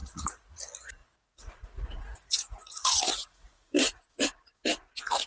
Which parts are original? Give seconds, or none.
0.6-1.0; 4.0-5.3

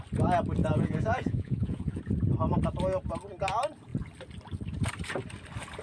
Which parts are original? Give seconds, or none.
0.0-0.6; 2.0-5.8

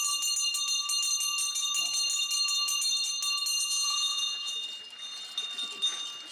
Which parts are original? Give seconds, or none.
0.0-3.5; 4.5-6.3

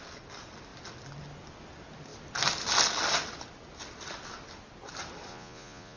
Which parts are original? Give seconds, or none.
0.0-5.3

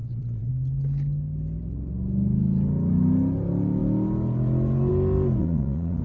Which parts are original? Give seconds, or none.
0.5-5.4

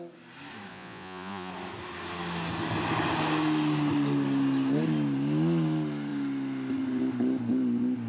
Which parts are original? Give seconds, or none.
0.0-0.7; 1.5-8.1

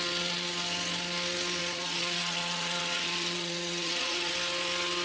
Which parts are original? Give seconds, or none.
0.0-1.6; 4.3-5.0

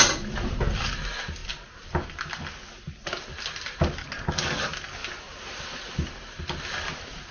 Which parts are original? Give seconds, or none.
0.0-7.3